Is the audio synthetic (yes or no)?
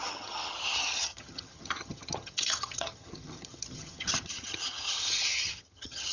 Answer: yes